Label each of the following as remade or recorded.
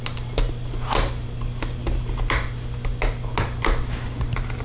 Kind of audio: recorded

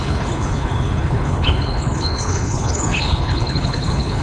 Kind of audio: remade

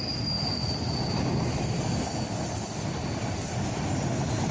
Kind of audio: recorded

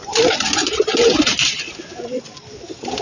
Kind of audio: recorded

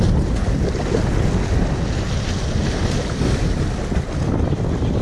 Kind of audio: recorded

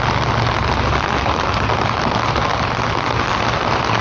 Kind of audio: recorded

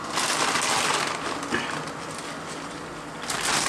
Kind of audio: recorded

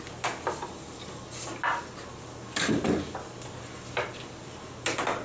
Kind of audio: recorded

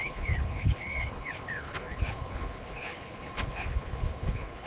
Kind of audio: remade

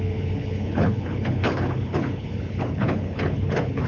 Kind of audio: remade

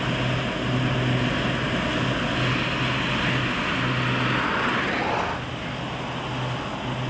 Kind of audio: recorded